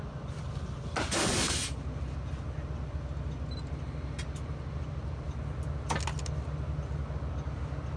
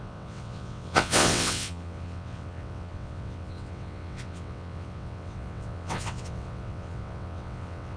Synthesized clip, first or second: second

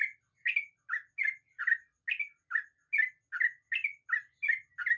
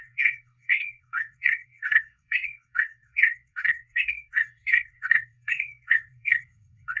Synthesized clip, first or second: second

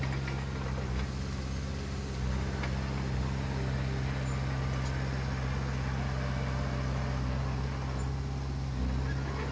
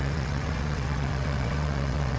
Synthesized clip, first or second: second